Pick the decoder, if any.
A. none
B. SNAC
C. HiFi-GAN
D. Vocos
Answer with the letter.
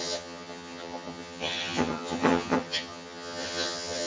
C